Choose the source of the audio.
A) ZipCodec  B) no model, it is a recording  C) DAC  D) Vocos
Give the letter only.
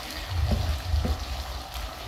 B